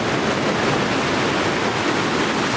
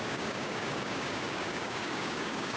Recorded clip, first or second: first